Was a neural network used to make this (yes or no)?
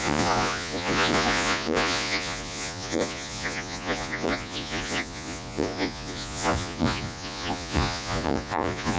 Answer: yes